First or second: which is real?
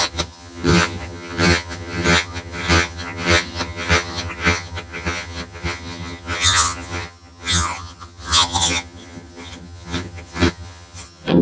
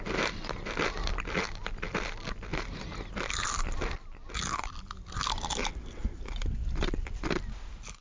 second